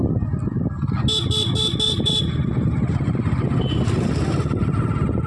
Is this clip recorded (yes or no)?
yes